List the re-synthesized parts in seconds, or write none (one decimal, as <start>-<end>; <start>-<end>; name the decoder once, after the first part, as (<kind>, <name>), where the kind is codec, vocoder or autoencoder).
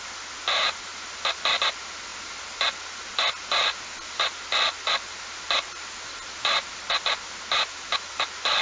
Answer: none